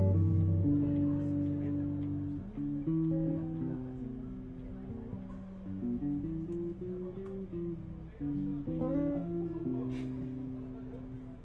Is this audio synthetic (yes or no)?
no